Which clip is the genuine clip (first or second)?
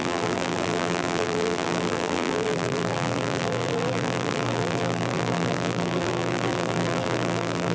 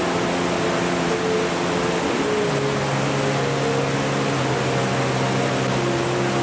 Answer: second